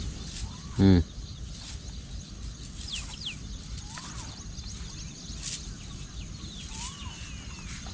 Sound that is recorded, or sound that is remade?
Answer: recorded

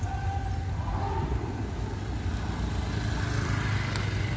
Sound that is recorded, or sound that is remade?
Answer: recorded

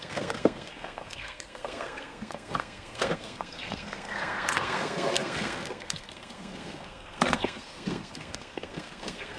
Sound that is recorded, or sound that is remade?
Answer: remade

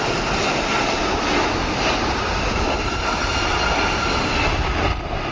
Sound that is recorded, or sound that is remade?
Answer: recorded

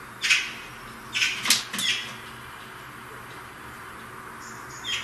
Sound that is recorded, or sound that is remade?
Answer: recorded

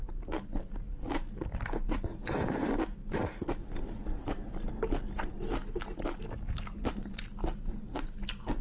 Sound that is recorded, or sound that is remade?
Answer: recorded